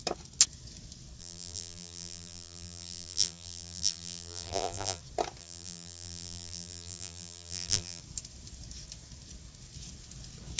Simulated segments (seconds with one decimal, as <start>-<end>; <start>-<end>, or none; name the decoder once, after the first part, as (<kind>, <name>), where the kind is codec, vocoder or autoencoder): 1.2-5.0 (vocoder, BigVGAN v2); 5.4-8.0